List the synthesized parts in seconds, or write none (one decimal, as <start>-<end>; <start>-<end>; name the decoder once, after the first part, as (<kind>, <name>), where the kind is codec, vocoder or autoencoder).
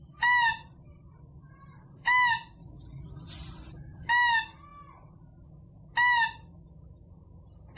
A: none